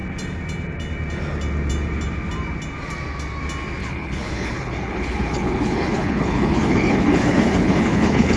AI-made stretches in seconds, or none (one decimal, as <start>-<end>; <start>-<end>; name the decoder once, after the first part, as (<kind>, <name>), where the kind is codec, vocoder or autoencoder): 3.8-8.4 (codec, HILCodec)

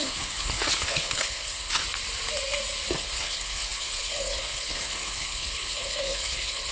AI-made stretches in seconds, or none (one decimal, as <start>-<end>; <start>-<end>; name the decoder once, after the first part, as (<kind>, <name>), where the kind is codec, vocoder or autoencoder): 0.0-1.8 (codec, HILCodec); 2.9-6.7

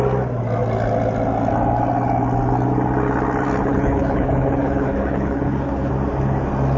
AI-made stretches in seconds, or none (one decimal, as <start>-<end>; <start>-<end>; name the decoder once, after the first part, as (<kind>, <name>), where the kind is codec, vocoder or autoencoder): 3.6-5.9 (codec, HILCodec)

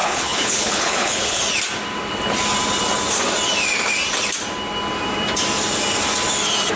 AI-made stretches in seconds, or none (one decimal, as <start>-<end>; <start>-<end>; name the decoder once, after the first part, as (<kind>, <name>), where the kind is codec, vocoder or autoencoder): 0.0-1.4 (codec, HILCodec)

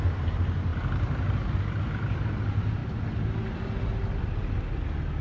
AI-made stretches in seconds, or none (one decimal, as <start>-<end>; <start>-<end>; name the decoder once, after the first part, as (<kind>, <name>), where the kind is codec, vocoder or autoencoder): none

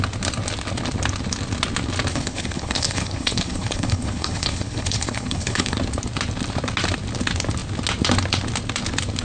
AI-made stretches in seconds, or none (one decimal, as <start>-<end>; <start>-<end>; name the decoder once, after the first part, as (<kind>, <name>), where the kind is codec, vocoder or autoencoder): 2.1-5.8 (codec, HILCodec)